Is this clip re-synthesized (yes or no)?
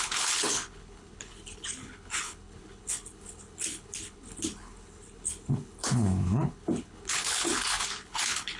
yes